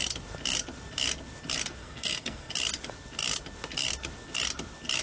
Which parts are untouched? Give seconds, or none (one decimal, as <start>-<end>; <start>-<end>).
0.0-1.8; 2.5-5.0